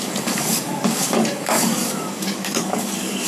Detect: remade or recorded remade